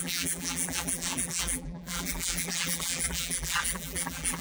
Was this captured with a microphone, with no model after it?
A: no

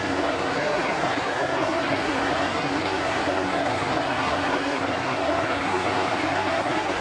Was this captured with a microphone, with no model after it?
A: no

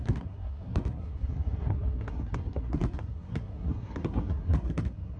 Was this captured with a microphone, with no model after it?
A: no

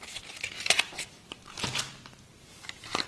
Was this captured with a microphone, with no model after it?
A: no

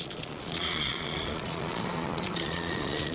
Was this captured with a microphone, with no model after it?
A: no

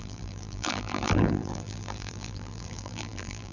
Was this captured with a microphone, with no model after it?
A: no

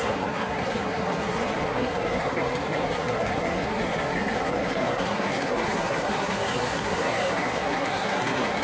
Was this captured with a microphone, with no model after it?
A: no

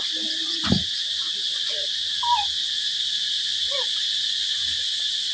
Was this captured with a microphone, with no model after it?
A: yes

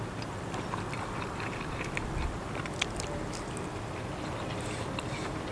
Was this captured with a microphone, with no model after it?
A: yes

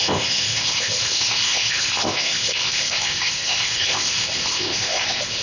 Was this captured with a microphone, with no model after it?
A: no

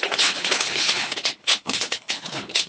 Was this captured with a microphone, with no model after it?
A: no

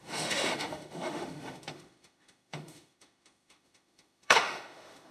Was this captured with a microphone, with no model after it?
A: no